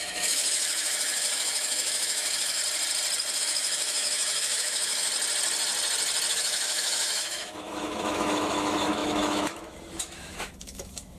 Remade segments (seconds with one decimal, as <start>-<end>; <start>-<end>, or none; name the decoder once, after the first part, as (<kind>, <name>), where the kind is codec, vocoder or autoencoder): 0.0-2.6 (autoencoder, DAC-VAE); 3.4-5.1; 6.3-11.2